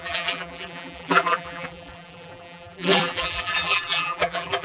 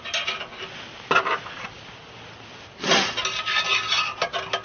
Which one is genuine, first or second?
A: second